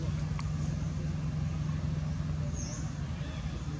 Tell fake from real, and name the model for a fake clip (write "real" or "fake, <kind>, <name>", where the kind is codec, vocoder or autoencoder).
real